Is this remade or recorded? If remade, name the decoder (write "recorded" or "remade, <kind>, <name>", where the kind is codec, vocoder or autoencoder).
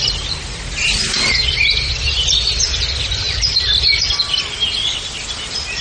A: recorded